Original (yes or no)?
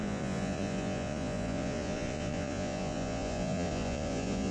no